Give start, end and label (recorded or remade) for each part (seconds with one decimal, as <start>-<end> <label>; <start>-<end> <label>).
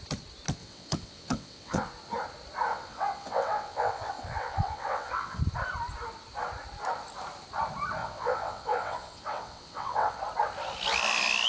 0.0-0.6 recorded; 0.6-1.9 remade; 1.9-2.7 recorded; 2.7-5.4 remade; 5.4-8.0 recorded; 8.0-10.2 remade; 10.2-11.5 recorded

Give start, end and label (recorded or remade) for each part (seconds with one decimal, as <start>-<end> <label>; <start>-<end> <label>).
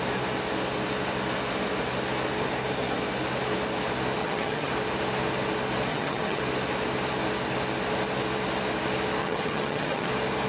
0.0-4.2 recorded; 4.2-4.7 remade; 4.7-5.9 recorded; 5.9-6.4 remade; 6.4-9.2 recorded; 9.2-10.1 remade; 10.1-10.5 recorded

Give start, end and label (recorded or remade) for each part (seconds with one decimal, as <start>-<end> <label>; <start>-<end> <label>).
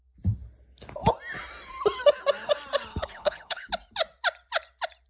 0.0-2.9 recorded; 2.9-3.7 remade; 3.7-5.1 recorded